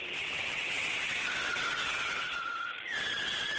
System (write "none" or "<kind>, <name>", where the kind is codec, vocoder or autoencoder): vocoder, WaveNeXt